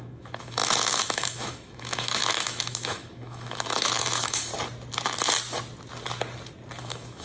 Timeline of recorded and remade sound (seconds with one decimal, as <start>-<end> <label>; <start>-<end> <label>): 0.0-4.5 remade; 4.5-6.8 recorded; 6.8-7.2 remade